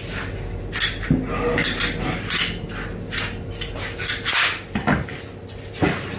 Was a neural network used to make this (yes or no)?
no